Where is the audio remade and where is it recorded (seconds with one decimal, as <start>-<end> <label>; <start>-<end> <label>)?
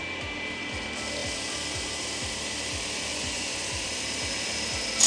0.0-3.1 recorded; 3.1-3.7 remade; 3.7-5.1 recorded